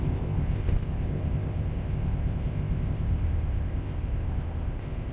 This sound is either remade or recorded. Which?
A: remade